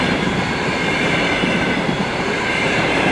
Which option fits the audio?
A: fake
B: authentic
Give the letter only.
A